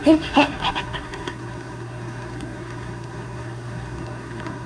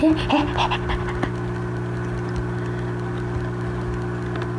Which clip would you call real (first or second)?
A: second